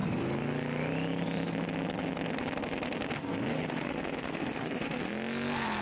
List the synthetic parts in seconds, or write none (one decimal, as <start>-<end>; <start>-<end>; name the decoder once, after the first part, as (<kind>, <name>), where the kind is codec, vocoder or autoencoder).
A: 3.5-5.1 (autoencoder, DAC-VAE)